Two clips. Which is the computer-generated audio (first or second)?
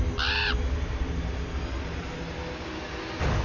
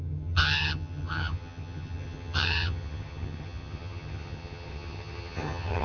second